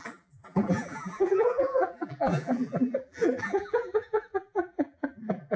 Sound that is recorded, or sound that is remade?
remade